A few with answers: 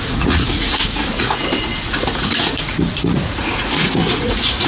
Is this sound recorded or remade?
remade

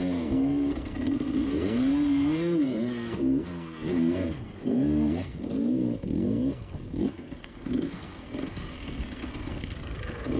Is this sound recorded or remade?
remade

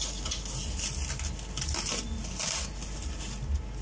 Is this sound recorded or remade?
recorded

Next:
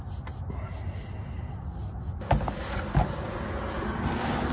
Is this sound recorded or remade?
recorded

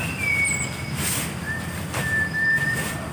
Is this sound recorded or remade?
recorded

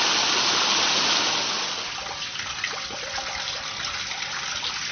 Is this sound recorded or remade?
recorded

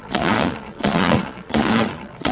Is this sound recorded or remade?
remade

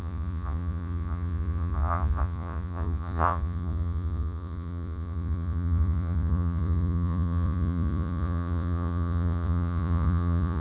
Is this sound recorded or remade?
remade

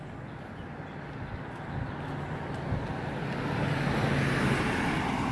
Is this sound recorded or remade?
recorded